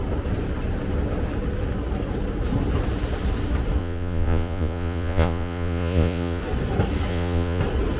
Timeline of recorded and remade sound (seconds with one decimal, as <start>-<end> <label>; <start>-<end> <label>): 0.0-3.8 recorded; 3.8-6.4 remade; 6.4-7.1 recorded; 7.1-7.6 remade; 7.6-8.0 recorded